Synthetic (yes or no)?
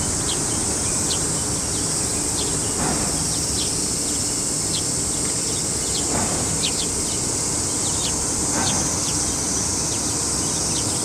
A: no